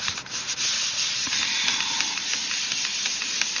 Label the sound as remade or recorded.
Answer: remade